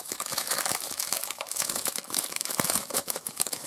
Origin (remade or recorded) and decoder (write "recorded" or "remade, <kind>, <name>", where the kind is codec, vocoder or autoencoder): remade, autoencoder, DAC-VAE